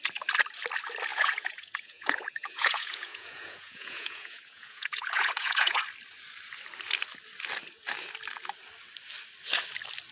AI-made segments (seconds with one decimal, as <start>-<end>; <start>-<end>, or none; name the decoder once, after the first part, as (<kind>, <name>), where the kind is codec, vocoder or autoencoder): 1.1-5.8 (vocoder, Vocos)